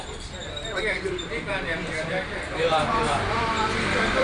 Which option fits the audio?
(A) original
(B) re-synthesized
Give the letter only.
B